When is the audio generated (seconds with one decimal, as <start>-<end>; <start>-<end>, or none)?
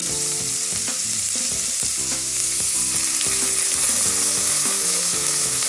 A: 2.1-2.8; 4.4-5.7